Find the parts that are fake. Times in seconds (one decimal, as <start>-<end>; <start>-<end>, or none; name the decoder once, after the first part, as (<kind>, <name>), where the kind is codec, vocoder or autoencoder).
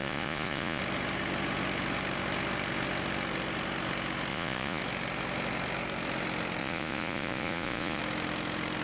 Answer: 0.0-0.8 (vocoder, Vocos); 4.3-4.8; 6.6-8.0